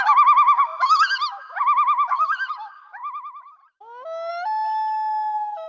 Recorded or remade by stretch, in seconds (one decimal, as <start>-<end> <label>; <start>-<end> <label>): 0.0-3.6 remade; 3.6-4.3 recorded; 4.3-5.7 remade